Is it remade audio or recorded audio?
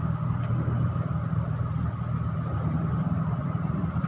remade